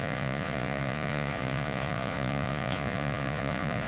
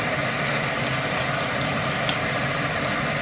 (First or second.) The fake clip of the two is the first